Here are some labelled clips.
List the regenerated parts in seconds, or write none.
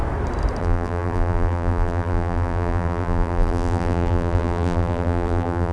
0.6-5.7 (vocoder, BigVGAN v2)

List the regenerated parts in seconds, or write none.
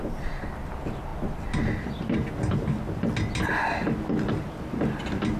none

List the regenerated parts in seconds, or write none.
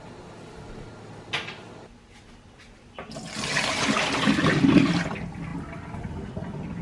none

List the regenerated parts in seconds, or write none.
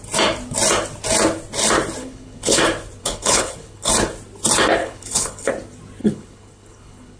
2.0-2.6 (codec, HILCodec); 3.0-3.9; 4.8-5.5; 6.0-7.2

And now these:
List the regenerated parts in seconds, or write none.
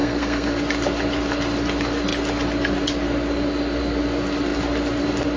0.0-0.6 (codec, SNAC)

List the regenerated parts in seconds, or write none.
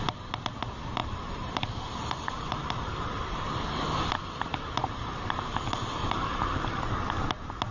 1.0-2.7 (vocoder, BigVGAN v2); 4.8-6.9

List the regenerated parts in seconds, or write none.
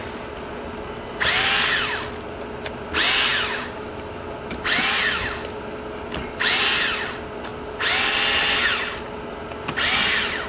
none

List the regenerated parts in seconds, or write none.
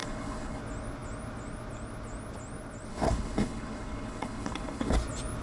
0.0-0.6 (codec, HILCodec); 2.9-4.9